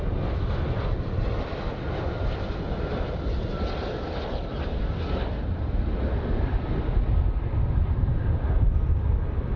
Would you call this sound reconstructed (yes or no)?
no